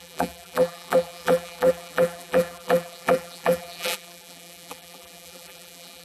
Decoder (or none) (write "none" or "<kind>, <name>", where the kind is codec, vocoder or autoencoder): vocoder, BigVGAN v2